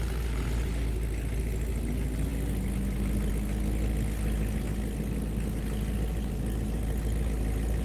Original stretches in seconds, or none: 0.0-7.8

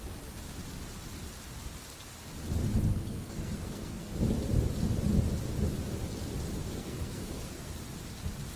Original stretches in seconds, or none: 0.0-2.9; 4.2-6.6; 7.7-8.6